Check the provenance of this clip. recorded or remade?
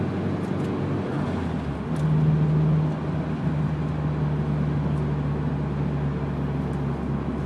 recorded